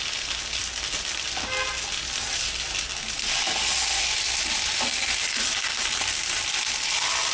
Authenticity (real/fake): real